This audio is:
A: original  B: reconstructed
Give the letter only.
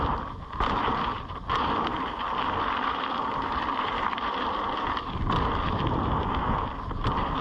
B